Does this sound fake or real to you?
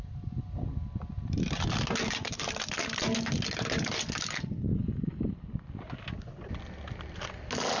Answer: real